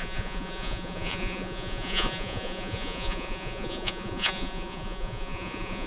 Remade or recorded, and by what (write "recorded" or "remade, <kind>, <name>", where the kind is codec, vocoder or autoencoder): remade, vocoder, Vocos